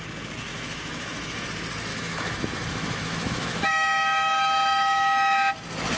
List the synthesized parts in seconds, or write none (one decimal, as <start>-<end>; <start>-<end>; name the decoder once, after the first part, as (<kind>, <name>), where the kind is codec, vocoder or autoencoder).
0.5-1.5 (autoencoder, DAC-VAE); 1.9-5.5